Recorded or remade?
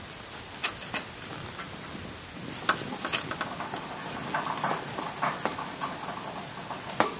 recorded